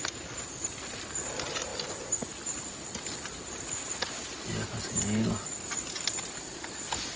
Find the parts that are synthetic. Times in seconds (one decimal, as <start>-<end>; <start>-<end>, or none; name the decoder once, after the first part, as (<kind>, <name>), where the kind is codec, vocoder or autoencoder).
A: none